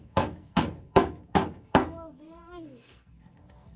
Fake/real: fake